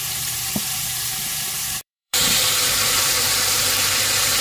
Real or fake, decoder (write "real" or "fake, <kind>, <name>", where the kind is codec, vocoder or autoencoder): fake, vocoder, BigVGAN v2